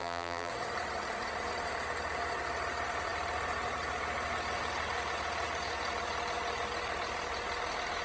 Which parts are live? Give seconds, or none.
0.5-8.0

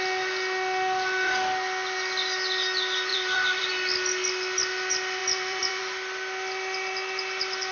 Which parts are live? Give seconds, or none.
0.0-3.1; 3.7-5.2; 5.8-7.7